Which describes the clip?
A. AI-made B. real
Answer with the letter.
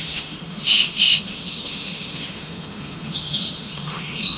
A